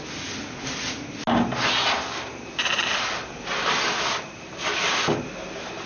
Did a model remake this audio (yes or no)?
no